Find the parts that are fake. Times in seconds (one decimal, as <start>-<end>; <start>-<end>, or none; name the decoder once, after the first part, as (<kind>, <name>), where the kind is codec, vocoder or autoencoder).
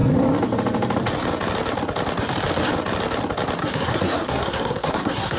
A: 3.6-5.4 (codec, SNAC)